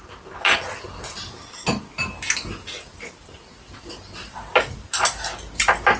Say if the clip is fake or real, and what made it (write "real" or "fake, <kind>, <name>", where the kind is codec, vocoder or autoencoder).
real